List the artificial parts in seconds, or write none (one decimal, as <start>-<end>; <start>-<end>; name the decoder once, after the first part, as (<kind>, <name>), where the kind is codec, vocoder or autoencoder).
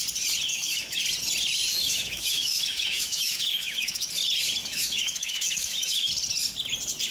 0.5-1.0 (autoencoder, DAC-VAE); 1.7-4.1; 4.6-6.1